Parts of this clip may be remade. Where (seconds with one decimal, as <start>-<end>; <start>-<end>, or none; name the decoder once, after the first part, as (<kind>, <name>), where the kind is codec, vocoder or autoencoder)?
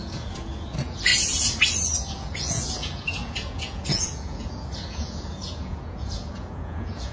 0.0-1.1 (vocoder, Vocos); 2.1-7.1